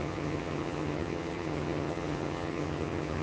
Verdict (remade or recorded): remade